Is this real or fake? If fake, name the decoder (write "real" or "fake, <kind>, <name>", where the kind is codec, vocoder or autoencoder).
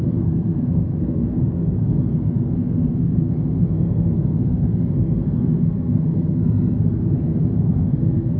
fake, codec, SNAC